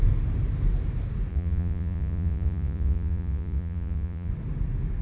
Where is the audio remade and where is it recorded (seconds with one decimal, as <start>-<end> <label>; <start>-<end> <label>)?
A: 0.0-1.3 recorded; 1.3-4.3 remade; 4.3-5.0 recorded